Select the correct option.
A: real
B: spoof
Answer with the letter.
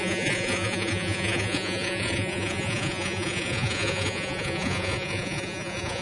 B